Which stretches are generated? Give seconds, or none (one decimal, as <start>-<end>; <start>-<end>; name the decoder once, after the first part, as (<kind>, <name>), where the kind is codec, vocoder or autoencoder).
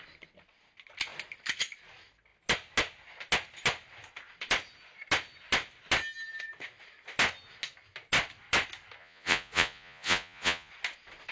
9.0-10.7 (vocoder, Vocos)